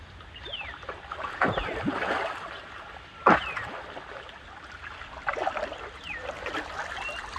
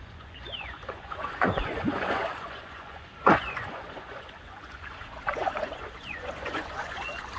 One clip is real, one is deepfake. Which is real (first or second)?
first